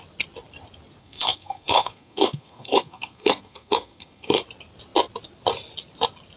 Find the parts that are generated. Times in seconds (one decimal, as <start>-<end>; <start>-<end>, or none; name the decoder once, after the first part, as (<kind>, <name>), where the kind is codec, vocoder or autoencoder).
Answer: 1.0-4.4 (codec, SNAC)